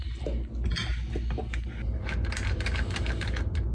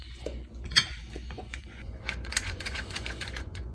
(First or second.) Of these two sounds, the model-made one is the second